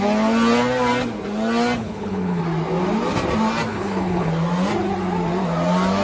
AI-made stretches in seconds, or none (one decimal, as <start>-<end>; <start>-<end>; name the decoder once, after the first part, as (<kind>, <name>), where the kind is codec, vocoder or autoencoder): 1.8-2.4 (codec, HILCodec); 3.7-4.3